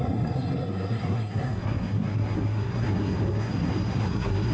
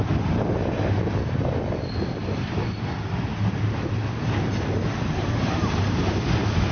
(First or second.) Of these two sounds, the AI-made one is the first